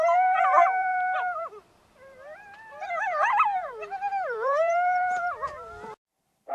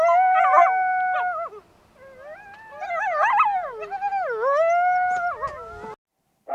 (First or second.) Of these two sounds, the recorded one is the second